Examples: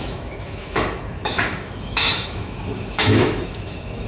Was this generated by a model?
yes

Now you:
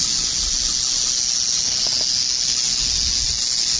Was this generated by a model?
no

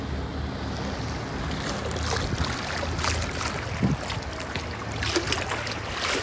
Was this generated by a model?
no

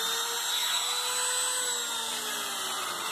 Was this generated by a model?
no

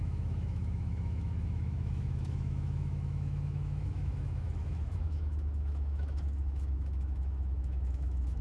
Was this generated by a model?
yes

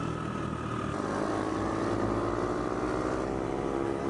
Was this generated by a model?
no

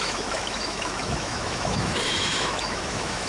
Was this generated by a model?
yes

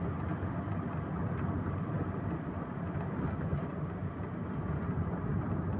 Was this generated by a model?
no